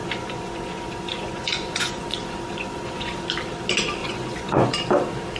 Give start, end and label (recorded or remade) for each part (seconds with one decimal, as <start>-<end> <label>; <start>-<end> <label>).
0.0-3.2 remade; 3.2-4.0 recorded; 4.0-4.7 remade; 4.7-5.4 recorded